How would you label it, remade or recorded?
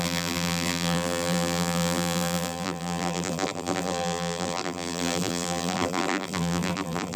remade